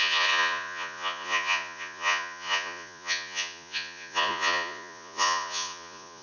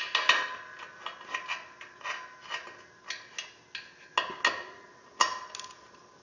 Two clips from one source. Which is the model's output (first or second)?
first